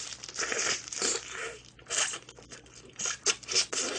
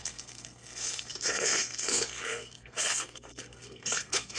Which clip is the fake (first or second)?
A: second